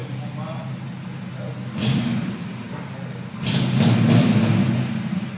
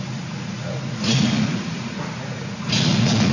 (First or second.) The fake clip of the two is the second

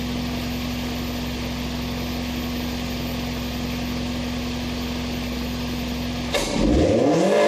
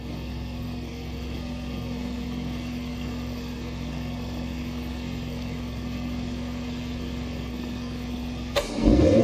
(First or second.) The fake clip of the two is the second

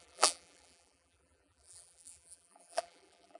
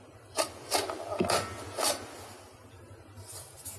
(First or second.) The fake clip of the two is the first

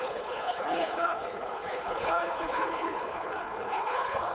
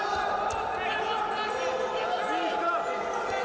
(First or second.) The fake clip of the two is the first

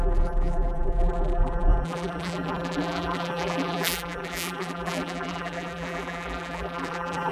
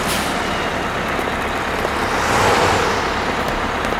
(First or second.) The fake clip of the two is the first